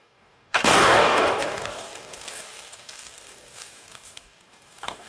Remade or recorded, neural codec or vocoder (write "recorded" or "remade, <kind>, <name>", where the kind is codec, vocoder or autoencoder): remade, codec, DAC